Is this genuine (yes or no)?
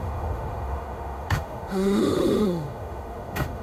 no